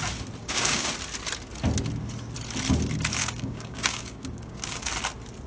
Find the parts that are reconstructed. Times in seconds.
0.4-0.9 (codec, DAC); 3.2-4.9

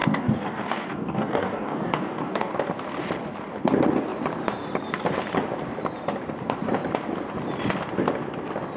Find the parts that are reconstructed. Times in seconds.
0.0-2.5 (codec, DAC)

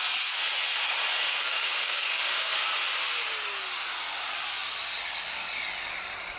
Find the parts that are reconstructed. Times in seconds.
1.3-2.5 (codec, DAC)

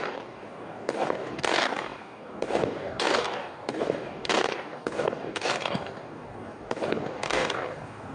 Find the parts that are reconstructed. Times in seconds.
0.0-8.1 (codec, DAC)

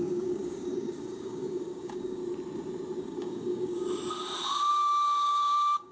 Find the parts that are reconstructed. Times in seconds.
0.0-2.2 (codec, DAC); 3.0-4.0; 4.7-5.9